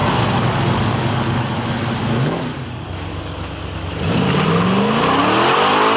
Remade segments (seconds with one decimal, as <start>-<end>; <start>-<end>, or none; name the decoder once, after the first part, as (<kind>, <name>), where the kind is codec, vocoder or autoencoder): 0.0-2.0 (codec, DAC); 2.5-3.9